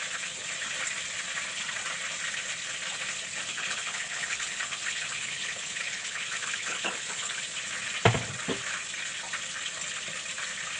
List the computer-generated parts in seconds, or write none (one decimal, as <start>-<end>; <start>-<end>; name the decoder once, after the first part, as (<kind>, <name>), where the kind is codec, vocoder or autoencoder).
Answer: 3.5-7.4 (codec, HILCodec)